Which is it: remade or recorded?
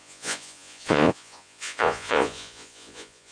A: remade